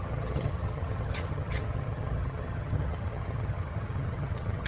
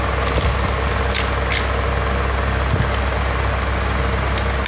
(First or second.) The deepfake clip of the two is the first